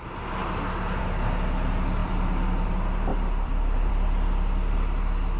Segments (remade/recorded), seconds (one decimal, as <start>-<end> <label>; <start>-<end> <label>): 0.0-2.0 recorded; 2.0-2.7 remade; 2.7-3.1 recorded; 3.1-3.9 remade; 3.9-5.4 recorded